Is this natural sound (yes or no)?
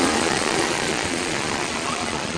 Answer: no